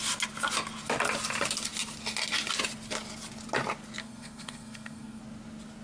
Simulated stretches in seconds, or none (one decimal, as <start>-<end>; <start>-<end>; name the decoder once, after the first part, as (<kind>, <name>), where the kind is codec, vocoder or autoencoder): 4.0-5.2 (codec, SNAC)